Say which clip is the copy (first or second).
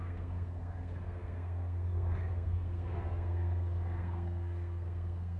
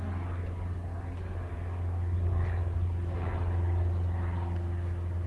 first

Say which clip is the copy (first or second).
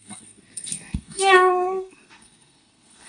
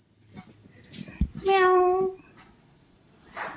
first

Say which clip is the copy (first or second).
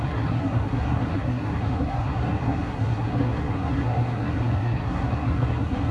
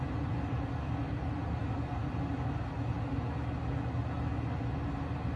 first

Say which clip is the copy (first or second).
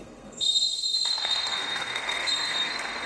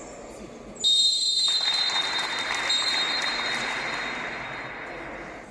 first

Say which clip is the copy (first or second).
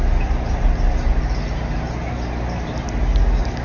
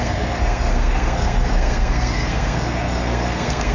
second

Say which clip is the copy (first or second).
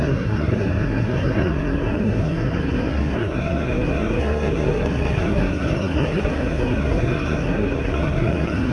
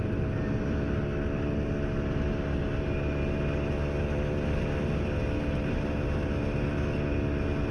first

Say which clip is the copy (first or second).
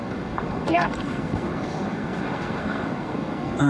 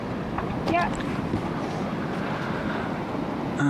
first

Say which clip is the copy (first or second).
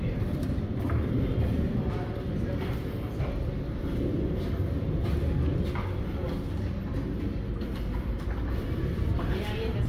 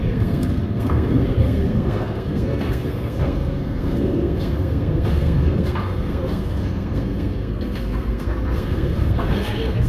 second